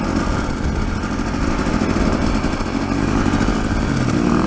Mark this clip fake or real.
real